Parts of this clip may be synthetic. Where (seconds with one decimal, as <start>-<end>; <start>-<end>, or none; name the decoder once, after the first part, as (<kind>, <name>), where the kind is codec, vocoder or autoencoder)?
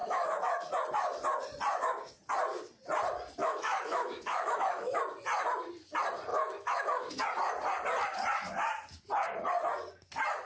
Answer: 0.0-0.7 (autoencoder, DAC-VAE); 3.4-5.0; 6.3-7.1